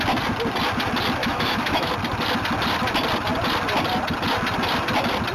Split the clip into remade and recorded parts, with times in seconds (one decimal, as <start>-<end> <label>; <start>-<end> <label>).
0.0-1.2 recorded; 1.2-1.9 remade; 1.9-5.3 recorded